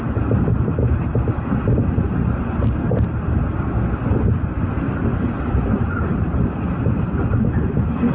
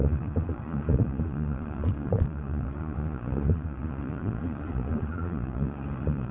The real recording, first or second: first